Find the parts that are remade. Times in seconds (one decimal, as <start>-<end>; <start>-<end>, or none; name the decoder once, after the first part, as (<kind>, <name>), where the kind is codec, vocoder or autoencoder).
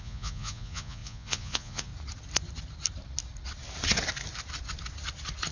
0.0-1.9 (vocoder, Vocos)